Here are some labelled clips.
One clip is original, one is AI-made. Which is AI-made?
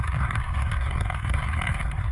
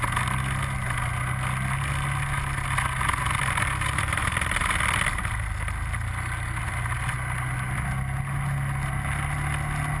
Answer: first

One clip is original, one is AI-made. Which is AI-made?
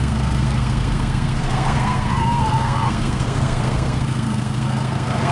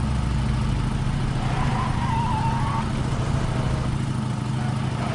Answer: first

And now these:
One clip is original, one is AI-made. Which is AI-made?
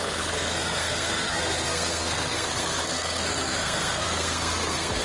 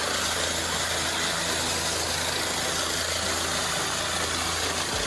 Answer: first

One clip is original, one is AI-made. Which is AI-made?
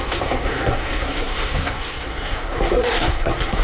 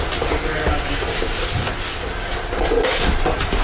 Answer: first